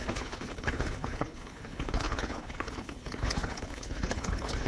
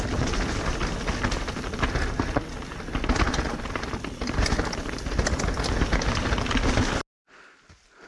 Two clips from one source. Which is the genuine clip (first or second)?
second